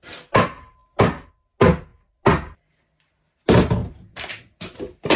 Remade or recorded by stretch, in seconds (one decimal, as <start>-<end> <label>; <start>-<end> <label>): 0.0-5.2 recorded